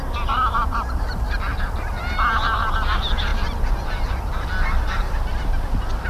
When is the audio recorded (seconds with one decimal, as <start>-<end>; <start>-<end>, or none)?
0.0-6.1